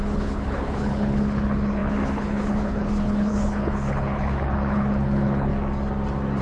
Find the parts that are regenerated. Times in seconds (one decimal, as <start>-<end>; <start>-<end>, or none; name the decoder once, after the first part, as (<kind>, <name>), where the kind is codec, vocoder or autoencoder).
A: 0.0-5.5 (codec, HILCodec)